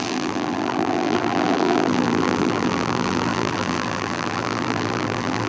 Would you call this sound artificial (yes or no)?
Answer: yes